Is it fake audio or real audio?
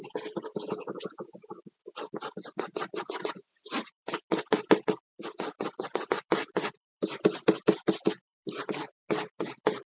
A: real